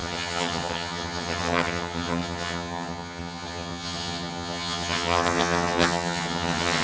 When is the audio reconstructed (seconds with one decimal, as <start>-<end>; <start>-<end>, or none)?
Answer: 0.0-6.8